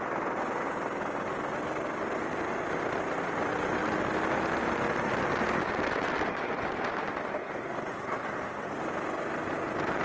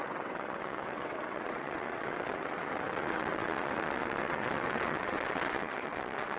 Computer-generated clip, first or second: second